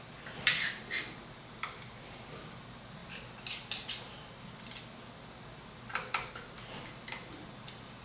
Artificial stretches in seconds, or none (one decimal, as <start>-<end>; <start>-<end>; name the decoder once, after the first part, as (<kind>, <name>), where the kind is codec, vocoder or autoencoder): none